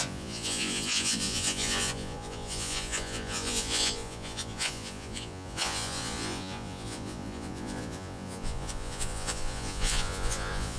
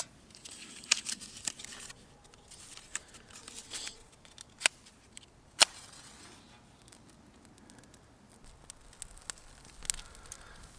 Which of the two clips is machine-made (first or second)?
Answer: first